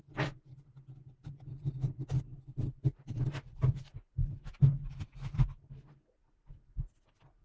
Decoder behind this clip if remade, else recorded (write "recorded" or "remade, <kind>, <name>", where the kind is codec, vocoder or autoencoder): recorded